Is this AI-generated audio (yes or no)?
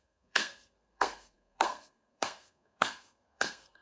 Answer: yes